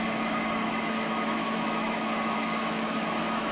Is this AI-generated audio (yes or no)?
yes